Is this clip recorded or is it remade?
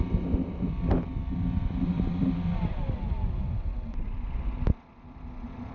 recorded